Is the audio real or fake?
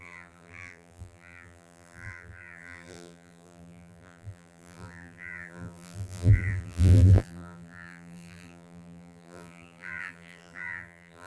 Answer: fake